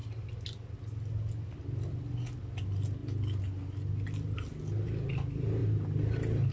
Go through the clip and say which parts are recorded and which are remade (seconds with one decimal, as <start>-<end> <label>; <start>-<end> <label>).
0.0-6.5 recorded